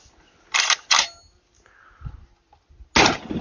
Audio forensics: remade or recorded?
recorded